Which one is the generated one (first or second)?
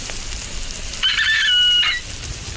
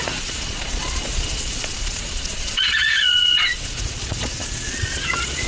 second